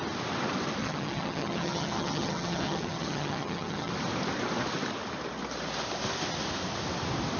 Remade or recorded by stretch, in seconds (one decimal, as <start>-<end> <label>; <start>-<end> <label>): 0.0-0.8 recorded; 0.8-3.9 remade; 3.9-7.4 recorded